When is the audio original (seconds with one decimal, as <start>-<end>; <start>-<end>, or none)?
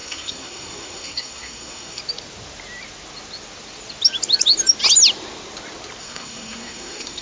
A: 2.0-6.0